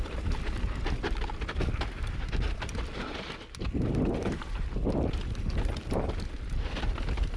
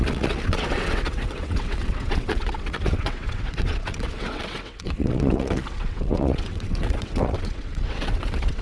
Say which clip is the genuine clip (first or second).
first